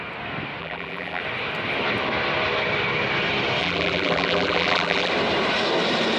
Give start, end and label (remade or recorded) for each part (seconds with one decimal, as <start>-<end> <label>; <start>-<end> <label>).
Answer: 0.0-0.6 recorded; 0.6-1.2 remade; 1.2-3.6 recorded; 3.6-5.1 remade; 5.1-6.2 recorded

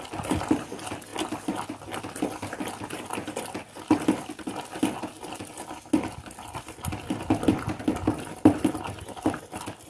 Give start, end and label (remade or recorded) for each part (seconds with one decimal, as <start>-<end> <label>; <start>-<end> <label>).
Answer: 0.0-9.9 recorded

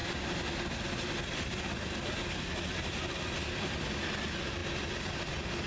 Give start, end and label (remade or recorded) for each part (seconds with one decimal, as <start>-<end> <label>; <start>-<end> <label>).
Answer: 0.0-5.7 recorded

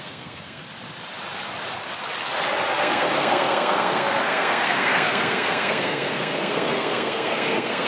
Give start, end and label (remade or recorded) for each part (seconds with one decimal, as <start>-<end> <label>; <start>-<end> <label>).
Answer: 0.0-0.6 remade; 0.6-2.8 recorded; 2.8-7.9 remade

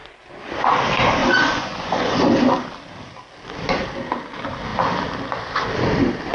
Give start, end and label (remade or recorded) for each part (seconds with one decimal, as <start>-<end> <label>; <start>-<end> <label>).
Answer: 0.0-1.2 recorded; 1.2-2.3 remade; 2.3-6.3 recorded

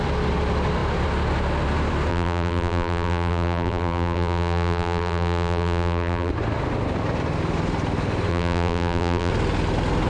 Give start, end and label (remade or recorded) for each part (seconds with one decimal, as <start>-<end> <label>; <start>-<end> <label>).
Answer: 0.0-2.1 recorded; 2.1-6.3 remade; 6.3-8.3 recorded; 8.3-9.3 remade; 9.3-10.1 recorded